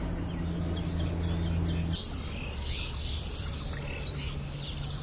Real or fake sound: real